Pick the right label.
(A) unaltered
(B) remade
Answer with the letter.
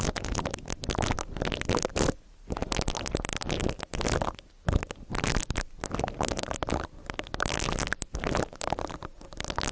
A